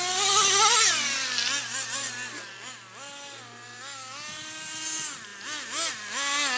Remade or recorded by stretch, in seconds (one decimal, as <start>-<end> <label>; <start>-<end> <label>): 0.0-6.6 recorded